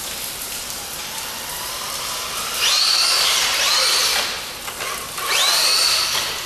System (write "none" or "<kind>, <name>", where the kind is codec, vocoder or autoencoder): none